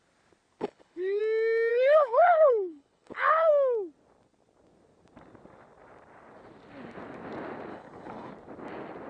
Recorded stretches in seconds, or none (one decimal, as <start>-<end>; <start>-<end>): 0.0-0.6; 1.2-1.7; 3.5-7.7; 8.3-9.1